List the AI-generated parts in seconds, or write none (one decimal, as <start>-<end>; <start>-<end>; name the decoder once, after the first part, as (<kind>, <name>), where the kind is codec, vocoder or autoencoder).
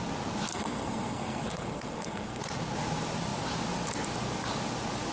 0.5-2.4 (codec, SNAC)